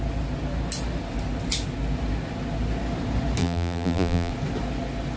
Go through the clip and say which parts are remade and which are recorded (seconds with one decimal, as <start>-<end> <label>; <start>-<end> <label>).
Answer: 0.0-3.4 recorded; 3.4-4.3 remade; 4.3-5.2 recorded